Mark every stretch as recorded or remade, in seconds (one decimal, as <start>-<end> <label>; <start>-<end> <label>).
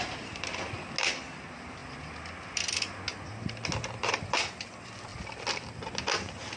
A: 0.0-6.6 recorded